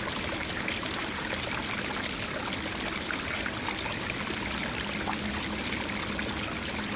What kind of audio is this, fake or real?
real